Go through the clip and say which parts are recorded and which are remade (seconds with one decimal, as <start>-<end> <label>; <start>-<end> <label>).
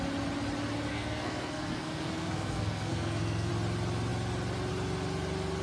0.0-0.9 recorded; 0.9-3.5 remade; 3.5-5.6 recorded